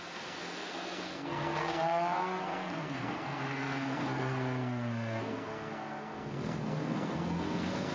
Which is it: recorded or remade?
remade